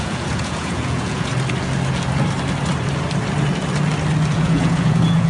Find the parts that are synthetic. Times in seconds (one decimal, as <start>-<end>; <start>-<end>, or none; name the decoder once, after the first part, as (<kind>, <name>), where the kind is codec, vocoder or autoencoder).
0.0-1.3 (vocoder, Vocos); 4.3-5.3